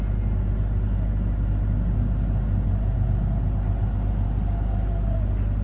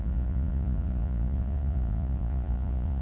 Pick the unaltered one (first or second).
first